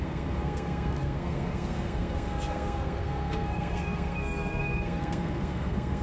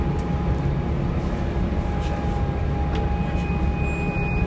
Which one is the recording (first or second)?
second